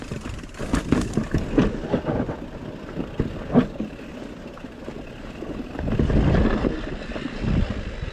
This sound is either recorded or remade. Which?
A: recorded